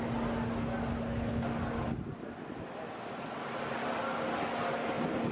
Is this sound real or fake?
real